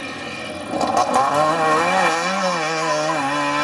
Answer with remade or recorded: recorded